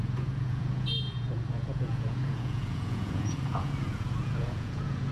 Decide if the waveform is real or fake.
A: fake